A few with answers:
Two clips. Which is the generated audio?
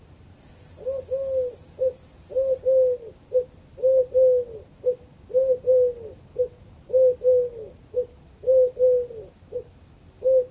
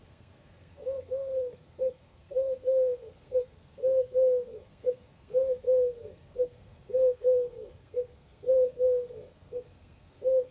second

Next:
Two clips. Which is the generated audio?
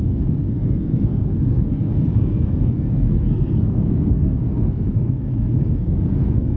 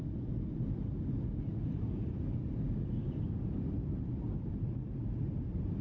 first